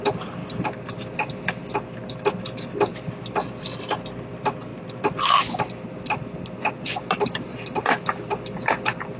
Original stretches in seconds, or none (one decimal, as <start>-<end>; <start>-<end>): 0.0-9.2